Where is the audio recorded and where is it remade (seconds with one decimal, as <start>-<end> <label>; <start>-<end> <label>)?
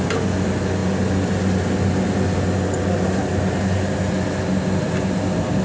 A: 0.0-5.6 recorded